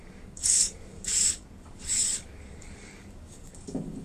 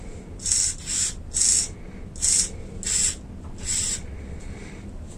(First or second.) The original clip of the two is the second